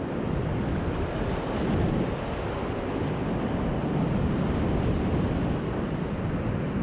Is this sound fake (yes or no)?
no